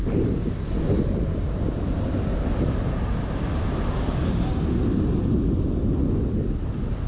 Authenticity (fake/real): real